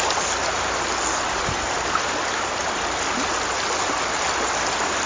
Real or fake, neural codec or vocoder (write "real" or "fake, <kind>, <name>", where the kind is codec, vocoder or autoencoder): real